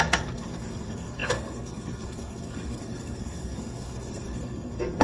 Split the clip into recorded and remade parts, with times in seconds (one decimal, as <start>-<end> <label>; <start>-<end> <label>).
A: 0.0-5.0 remade